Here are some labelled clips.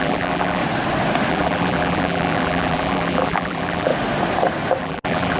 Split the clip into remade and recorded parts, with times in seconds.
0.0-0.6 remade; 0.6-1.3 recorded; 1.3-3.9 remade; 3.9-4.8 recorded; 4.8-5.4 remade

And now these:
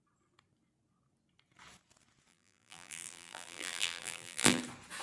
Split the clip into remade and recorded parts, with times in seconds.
0.0-2.3 recorded; 2.3-4.6 remade; 4.6-5.0 recorded

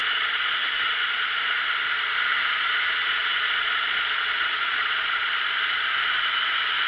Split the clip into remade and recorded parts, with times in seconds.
0.0-1.4 remade; 1.4-2.4 recorded; 2.4-5.3 remade; 5.3-6.9 recorded

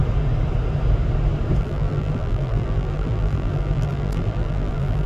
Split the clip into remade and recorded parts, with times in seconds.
0.0-1.6 recorded; 1.6-5.1 remade

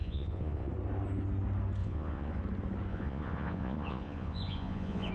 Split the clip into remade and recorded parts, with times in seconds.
0.0-0.7 remade; 0.7-1.8 recorded; 1.8-2.4 remade; 2.4-2.9 recorded; 2.9-5.1 remade

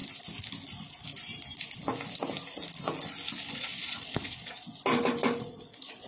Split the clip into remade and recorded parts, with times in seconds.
0.0-3.5 recorded; 3.5-4.7 remade; 4.7-5.4 recorded; 5.4-6.1 remade